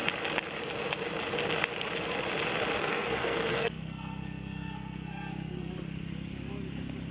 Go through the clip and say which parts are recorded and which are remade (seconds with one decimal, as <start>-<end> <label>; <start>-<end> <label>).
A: 0.0-2.8 recorded; 2.8-5.7 remade; 5.7-7.1 recorded

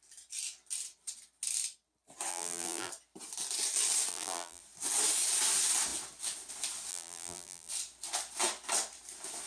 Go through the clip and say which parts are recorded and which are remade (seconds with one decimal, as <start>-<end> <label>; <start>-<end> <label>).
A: 0.0-2.3 recorded; 2.3-2.9 remade; 2.9-4.1 recorded; 4.1-4.6 remade; 4.6-6.9 recorded; 6.9-7.7 remade; 7.7-9.5 recorded

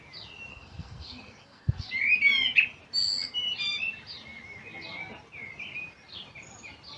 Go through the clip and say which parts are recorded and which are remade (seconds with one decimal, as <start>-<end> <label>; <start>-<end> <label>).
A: 0.0-0.5 recorded; 0.5-1.9 remade; 1.9-7.0 recorded

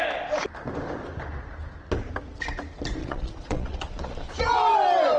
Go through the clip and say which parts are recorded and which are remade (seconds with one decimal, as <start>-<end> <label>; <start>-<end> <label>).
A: 0.0-3.0 recorded; 3.0-4.3 remade; 4.3-5.2 recorded

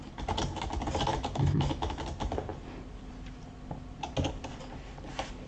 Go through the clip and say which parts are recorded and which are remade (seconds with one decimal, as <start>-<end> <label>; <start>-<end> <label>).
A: 0.0-1.1 recorded; 1.1-2.0 remade; 2.0-5.5 recorded

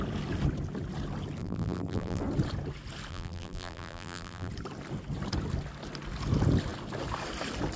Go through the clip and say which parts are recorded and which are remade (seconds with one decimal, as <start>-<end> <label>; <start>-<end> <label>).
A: 0.0-1.4 recorded; 1.4-2.2 remade; 2.2-3.1 recorded; 3.1-4.5 remade; 4.5-7.8 recorded